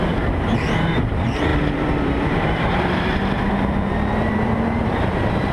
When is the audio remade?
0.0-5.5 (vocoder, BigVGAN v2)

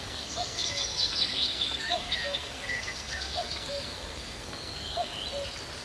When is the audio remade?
0.0-5.1 (codec, SNAC)

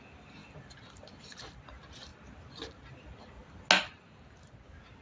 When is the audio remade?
none

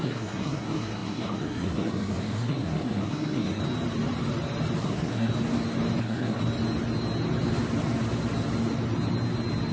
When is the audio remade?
0.0-3.6 (codec, SNAC); 4.8-5.3; 6.0-6.4

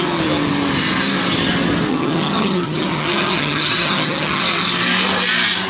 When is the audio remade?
1.9-4.4 (vocoder, HiFi-GAN)

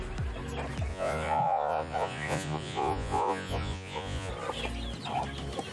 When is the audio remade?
0.9-4.3 (vocoder, Vocos)